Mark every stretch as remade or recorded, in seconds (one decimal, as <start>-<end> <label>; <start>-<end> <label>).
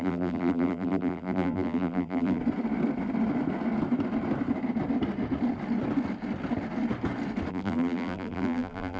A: 0.0-2.4 remade; 2.4-7.5 recorded; 7.5-9.0 remade